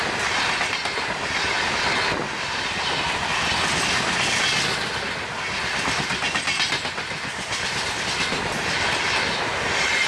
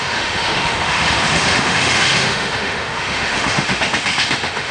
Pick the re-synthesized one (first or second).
second